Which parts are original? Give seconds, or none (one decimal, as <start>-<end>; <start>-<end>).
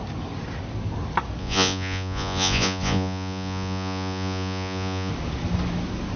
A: 0.0-1.4; 5.1-6.2